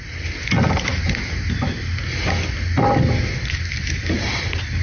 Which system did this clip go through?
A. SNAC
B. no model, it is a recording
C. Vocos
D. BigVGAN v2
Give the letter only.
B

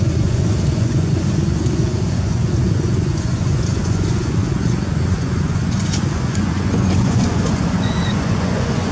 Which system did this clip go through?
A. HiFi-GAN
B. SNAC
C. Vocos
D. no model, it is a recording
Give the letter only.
C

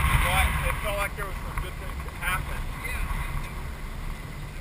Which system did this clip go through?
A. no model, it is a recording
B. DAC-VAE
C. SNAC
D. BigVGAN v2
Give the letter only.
A